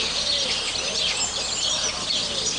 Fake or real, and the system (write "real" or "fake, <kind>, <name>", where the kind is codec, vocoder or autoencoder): real